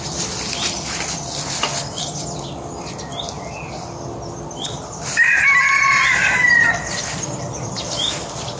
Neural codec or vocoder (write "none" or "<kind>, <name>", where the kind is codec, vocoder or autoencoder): none